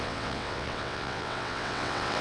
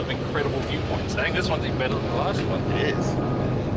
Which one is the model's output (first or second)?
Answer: first